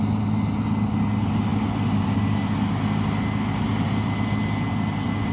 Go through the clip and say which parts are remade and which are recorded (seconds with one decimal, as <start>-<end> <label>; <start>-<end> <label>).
0.0-5.3 recorded